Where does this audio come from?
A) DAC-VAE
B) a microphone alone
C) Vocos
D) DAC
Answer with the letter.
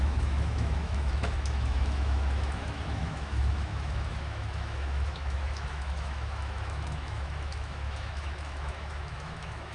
A